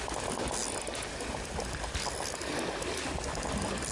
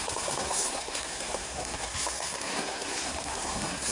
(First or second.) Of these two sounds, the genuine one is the first